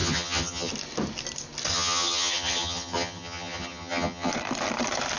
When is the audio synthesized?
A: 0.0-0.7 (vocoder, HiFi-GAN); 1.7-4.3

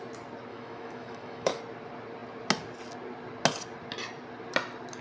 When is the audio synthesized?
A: 0.5-1.6 (autoencoder, DAC-VAE)

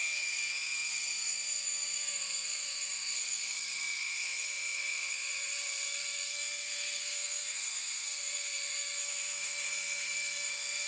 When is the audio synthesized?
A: 0.0-10.9 (codec, SNAC)